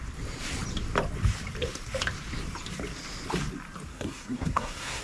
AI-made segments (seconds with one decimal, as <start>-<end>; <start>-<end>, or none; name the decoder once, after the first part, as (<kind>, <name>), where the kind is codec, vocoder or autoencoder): 3.9-5.0 (codec, SNAC)